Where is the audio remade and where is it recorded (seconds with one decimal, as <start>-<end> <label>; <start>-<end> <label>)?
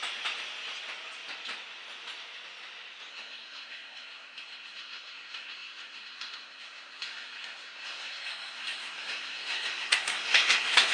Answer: 0.0-3.1 recorded; 3.1-10.9 remade